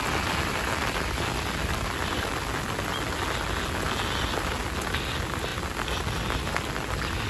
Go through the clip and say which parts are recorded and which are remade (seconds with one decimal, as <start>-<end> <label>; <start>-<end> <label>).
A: 0.0-7.3 recorded